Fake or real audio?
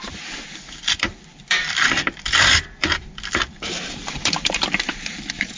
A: fake